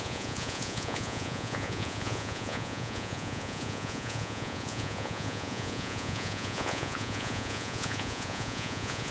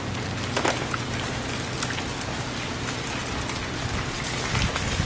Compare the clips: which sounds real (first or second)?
second